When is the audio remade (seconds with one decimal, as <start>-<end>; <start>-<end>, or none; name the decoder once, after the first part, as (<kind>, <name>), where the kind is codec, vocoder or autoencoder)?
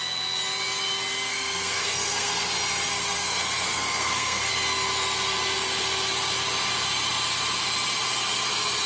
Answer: 1.3-2.5 (codec, SNAC); 2.9-4.5